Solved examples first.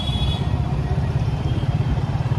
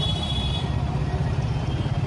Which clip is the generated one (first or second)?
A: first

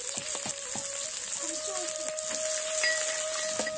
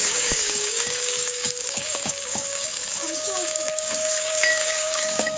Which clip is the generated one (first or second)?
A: second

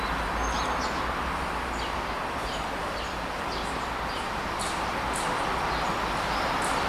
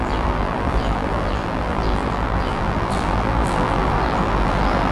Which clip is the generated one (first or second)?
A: second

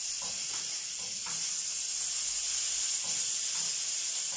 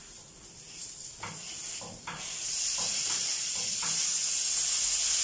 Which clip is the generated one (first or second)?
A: second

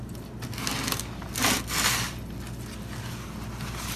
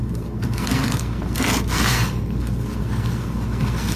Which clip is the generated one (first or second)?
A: second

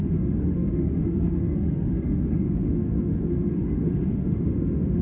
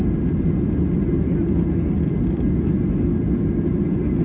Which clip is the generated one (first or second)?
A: first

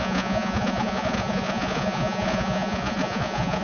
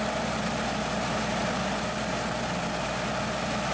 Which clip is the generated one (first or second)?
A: first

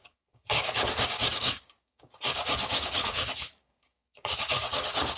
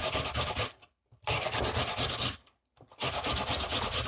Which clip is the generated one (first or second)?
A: first